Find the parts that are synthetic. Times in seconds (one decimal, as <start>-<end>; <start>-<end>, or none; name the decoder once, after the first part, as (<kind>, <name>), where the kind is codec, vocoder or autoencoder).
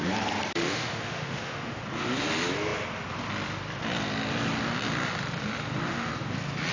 0.5-1.8 (autoencoder, DAC-VAE)